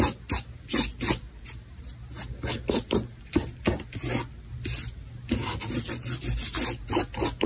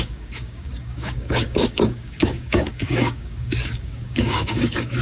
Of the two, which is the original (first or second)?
first